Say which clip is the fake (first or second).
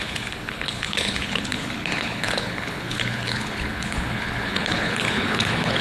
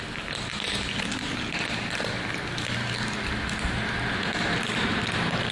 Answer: first